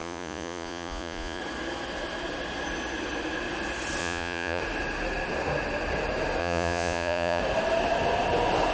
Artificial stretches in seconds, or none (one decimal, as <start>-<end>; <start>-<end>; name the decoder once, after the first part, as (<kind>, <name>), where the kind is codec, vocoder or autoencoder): 0.0-1.4 (vocoder, Vocos); 4.0-4.6; 6.4-7.4